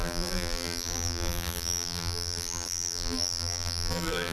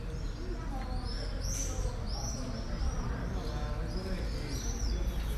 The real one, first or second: second